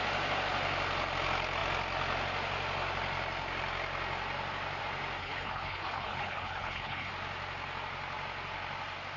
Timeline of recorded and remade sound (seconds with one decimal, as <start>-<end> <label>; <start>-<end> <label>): 0.0-5.2 recorded; 5.2-7.1 remade; 7.1-9.2 recorded